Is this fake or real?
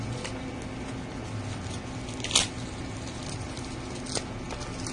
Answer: real